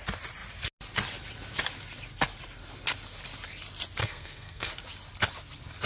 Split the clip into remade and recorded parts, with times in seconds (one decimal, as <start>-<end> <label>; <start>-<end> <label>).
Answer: 0.0-4.0 recorded; 4.0-4.7 remade; 4.7-5.9 recorded